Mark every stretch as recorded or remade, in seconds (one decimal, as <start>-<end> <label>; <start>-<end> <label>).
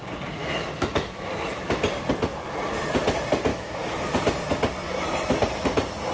0.0-0.4 recorded; 0.4-1.3 remade; 1.3-3.5 recorded; 3.5-4.0 remade; 4.0-6.1 recorded